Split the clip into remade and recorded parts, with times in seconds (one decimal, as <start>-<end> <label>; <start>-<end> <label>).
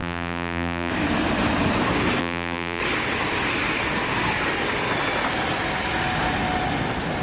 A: 0.0-0.9 remade; 0.9-2.2 recorded; 2.2-2.8 remade; 2.8-7.2 recorded